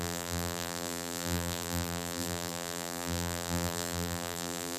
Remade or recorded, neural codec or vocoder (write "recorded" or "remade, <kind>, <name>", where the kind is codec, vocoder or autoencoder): remade, vocoder, BigVGAN v2